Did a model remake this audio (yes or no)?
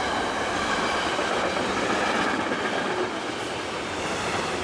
no